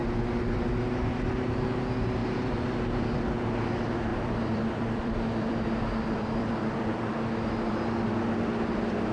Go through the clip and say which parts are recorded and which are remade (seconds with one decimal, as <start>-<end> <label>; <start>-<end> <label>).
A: 0.0-2.2 recorded; 2.2-2.8 remade; 2.8-4.1 recorded; 4.1-7.0 remade; 7.0-9.1 recorded